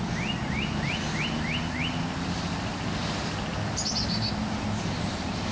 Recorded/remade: recorded